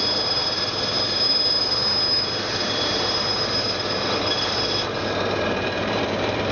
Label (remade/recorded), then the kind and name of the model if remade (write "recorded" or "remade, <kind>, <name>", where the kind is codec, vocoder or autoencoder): remade, vocoder, BigVGAN v2